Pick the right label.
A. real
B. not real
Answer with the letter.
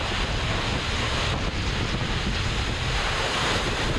A